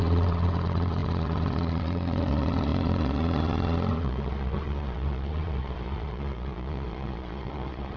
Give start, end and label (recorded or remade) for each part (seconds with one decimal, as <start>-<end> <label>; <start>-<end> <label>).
0.0-8.0 remade